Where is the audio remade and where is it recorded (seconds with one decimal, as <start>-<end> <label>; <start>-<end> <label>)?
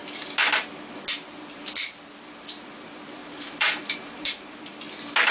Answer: 0.0-3.2 recorded; 3.2-4.7 remade; 4.7-5.3 recorded